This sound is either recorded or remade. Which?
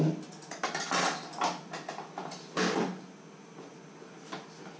recorded